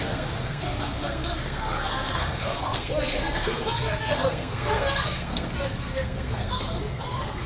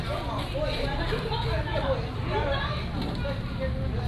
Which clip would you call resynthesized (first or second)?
first